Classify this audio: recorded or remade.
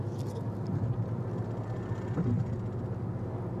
recorded